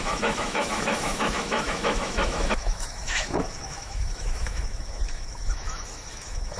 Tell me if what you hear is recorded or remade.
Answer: remade